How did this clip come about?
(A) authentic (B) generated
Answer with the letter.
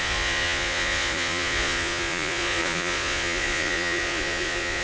B